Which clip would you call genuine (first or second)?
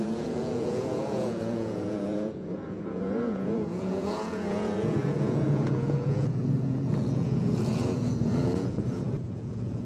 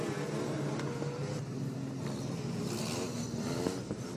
second